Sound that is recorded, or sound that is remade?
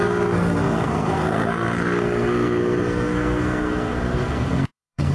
remade